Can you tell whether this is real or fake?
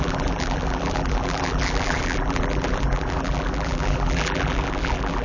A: fake